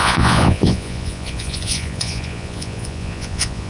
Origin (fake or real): fake